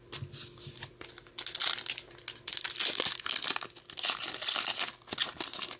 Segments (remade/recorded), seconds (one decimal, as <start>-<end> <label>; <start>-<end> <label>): 0.0-5.8 recorded